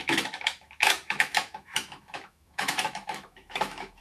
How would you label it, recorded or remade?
remade